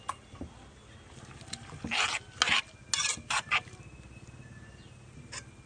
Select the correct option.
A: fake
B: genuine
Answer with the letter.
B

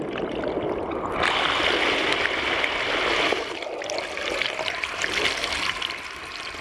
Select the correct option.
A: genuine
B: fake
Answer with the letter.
A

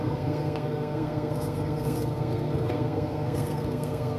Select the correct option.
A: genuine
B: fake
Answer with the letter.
B